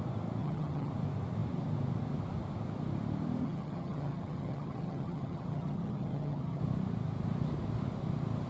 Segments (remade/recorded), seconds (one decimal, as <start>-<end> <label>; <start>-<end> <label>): 0.0-0.4 recorded; 0.4-0.9 remade; 0.9-3.4 recorded; 3.4-6.6 remade; 6.6-8.5 recorded